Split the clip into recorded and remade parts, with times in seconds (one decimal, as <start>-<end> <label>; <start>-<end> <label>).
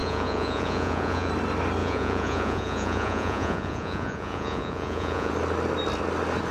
0.0-1.3 remade; 1.3-1.8 recorded; 1.8-5.3 remade; 5.3-6.5 recorded